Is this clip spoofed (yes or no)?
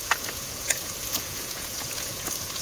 yes